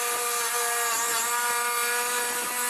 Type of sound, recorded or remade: recorded